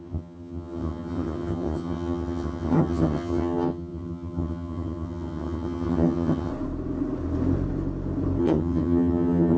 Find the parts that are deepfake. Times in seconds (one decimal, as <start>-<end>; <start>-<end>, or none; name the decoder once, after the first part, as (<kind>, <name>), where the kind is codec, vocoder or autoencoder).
0.0-6.5 (vocoder, HiFi-GAN); 8.4-9.6